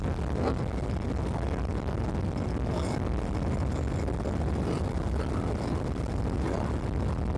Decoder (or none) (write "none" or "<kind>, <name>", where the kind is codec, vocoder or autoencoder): none